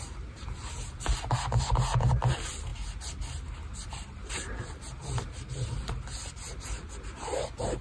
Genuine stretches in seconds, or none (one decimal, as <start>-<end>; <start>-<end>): 0.0-7.8